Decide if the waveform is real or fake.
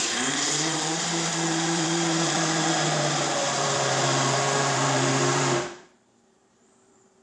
fake